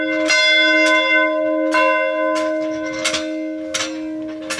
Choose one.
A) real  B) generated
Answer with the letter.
A